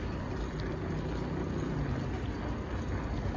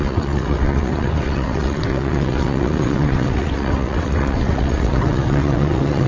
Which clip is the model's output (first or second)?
second